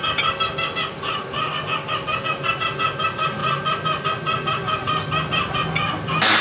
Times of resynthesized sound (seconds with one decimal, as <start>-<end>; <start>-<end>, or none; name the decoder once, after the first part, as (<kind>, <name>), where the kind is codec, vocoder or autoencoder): none